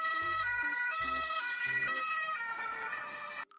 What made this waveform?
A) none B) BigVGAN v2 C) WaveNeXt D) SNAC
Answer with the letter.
B